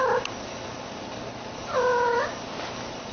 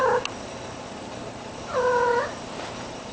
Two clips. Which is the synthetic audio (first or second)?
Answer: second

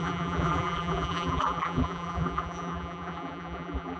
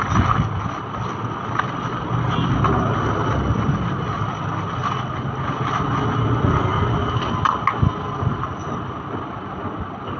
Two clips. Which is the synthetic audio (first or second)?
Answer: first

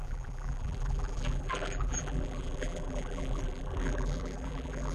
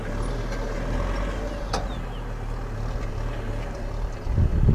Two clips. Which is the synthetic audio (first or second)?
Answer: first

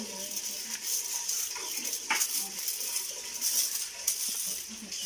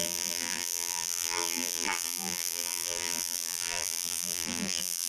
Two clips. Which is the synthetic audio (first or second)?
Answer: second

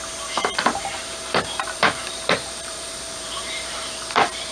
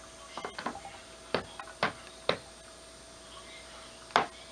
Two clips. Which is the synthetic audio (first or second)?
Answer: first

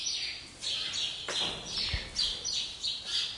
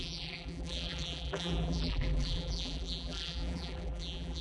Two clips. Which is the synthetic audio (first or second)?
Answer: second